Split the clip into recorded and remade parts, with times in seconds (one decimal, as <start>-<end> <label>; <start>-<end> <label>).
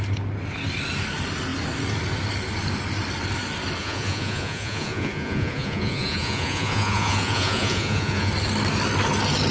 0.0-3.8 recorded; 3.8-8.3 remade; 8.3-9.5 recorded